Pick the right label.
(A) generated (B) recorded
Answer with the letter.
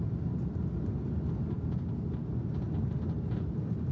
B